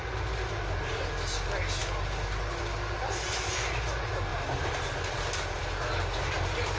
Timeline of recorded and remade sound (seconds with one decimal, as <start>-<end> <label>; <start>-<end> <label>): 0.0-6.8 recorded